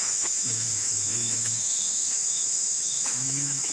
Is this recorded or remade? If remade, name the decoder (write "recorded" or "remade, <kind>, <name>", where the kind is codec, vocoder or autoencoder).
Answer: remade, autoencoder, DAC-VAE